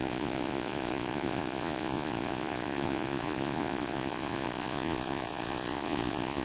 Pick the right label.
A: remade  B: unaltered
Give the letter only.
A